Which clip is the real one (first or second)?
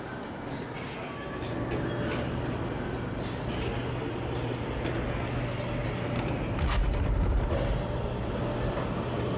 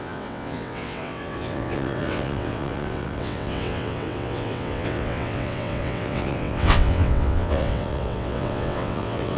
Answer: first